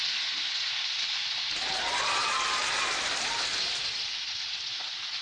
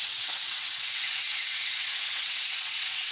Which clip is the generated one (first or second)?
second